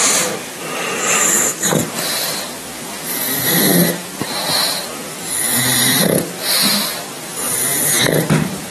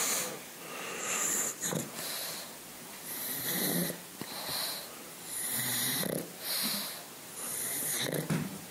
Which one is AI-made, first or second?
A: second